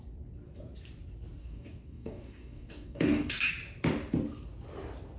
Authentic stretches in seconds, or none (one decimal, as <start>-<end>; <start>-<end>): 0.0-1.4; 3.5-5.2